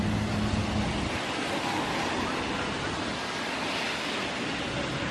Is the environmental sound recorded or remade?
recorded